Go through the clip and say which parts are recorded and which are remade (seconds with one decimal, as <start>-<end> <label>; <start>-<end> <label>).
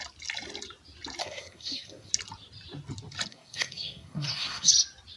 0.0-1.2 recorded; 1.2-2.1 remade; 2.1-3.3 recorded; 3.3-4.7 remade; 4.7-5.2 recorded